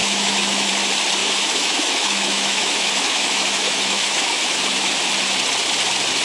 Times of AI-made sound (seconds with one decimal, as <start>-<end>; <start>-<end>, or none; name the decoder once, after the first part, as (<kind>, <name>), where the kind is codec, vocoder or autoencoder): 0.0-0.7 (autoencoder, DAC-VAE); 1.2-4.9

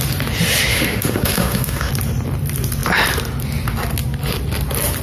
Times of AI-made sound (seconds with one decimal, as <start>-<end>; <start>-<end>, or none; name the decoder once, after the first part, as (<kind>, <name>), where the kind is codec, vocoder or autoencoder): 0.7-1.9 (autoencoder, DAC-VAE)

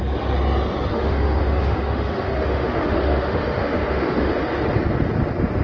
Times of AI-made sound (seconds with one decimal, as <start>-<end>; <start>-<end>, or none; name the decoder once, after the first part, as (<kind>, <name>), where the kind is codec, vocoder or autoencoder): 0.9-4.3 (autoencoder, DAC-VAE)

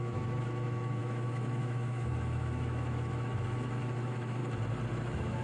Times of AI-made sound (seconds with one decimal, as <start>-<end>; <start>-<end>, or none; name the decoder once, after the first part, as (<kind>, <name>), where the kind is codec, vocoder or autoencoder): 0.0-4.4 (autoencoder, DAC-VAE); 5.0-5.4

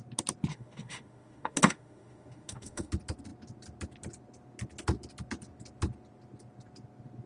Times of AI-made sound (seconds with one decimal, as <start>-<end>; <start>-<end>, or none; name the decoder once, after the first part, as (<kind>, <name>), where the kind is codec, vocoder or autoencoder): 0.5-2.9 (autoencoder, DAC-VAE)

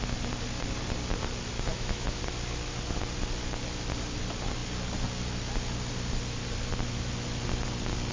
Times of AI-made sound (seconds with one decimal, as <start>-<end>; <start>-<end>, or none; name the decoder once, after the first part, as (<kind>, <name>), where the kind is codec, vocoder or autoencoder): 1.7-2.2 (autoencoder, DAC-VAE)